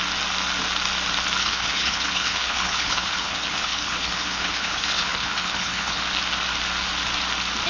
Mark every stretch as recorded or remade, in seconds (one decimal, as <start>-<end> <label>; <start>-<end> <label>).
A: 0.0-1.4 recorded; 1.4-6.0 remade; 6.0-7.7 recorded